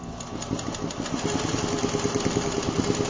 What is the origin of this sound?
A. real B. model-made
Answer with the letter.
A